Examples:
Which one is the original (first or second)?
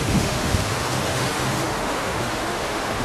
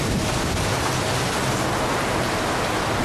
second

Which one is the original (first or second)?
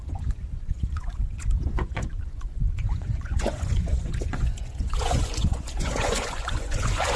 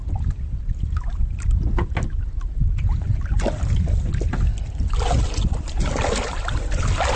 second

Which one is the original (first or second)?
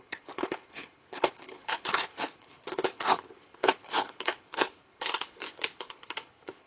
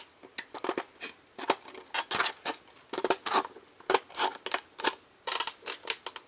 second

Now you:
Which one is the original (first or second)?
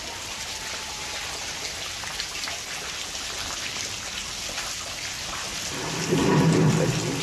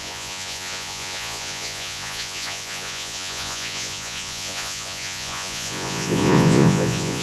first